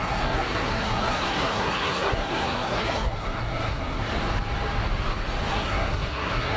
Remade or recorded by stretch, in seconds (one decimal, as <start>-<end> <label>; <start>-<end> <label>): 0.0-4.0 remade; 4.0-5.5 recorded; 5.5-6.6 remade